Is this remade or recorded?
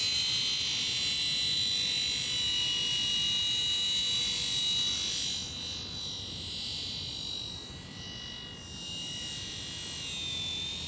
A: recorded